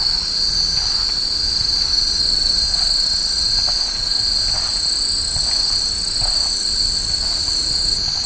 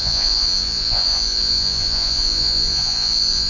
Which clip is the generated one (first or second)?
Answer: second